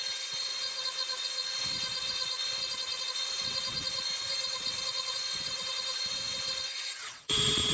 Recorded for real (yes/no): no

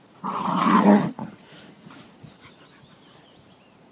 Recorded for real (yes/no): no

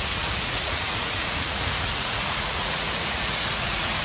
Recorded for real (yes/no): no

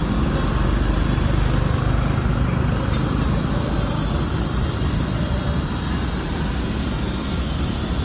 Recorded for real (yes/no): yes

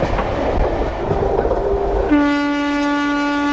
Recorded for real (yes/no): yes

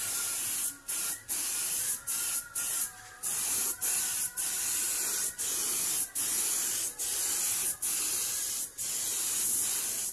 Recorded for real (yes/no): yes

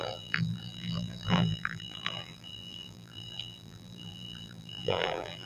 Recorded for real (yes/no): no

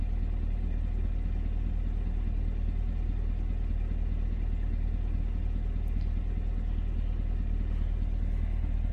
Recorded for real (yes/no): yes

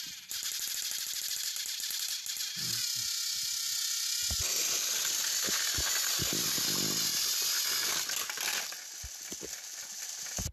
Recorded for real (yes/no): yes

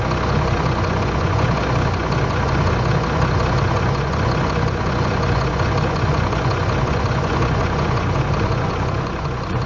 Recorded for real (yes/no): no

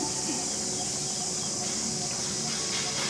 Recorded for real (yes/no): yes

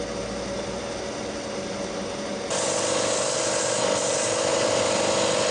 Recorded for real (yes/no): yes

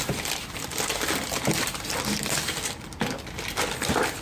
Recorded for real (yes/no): no